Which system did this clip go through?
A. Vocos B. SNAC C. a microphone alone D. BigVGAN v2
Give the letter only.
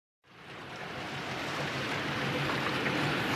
D